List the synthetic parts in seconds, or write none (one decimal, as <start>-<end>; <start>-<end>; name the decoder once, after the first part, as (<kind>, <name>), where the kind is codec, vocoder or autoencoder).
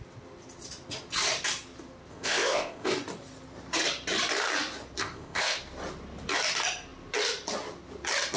2.1-2.9 (codec, ZipCodec); 5.0-5.6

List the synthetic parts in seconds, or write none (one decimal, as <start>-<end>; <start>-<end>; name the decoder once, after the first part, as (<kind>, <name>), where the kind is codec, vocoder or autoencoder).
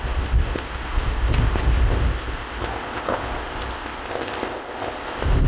0.0-5.5 (codec, ZipCodec)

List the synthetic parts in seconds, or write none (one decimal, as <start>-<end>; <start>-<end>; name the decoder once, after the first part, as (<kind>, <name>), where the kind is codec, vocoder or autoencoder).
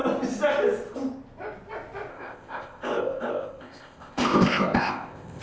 2.1-5.4 (codec, ZipCodec)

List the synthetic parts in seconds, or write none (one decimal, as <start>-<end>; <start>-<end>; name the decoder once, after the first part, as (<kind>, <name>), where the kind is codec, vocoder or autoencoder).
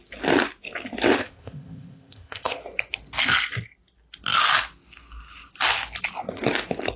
1.2-2.6 (codec, ZipCodec)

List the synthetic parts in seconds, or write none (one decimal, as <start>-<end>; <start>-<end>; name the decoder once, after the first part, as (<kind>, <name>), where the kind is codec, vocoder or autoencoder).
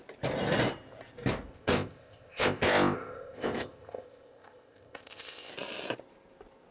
1.5-5.5 (codec, ZipCodec)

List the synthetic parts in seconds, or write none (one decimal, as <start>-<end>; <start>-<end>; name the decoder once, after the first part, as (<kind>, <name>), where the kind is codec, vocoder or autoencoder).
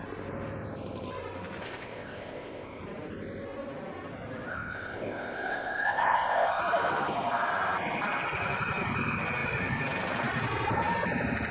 1.6-2.8 (codec, ZipCodec); 4.5-6.6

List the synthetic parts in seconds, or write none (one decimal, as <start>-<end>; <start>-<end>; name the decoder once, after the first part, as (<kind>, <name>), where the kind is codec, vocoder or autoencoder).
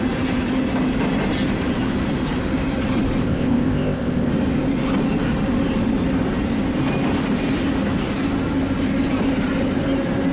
3.2-4.3 (codec, ZipCodec)